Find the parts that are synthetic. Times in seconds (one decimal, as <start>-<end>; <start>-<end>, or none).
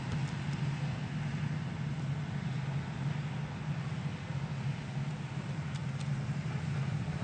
none